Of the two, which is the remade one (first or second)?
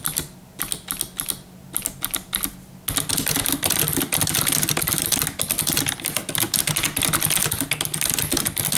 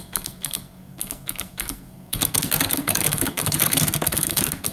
second